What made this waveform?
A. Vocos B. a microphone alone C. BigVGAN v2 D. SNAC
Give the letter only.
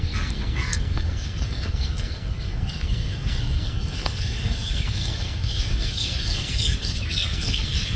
D